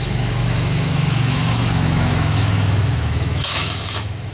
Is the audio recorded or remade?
remade